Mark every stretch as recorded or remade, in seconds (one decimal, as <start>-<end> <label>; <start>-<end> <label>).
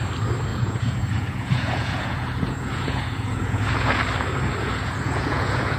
0.0-0.5 recorded; 0.5-4.0 remade; 4.0-4.6 recorded; 4.6-5.8 remade